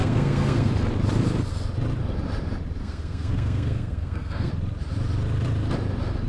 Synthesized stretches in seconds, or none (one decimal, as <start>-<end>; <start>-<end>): 0.0-0.7; 2.8-4.5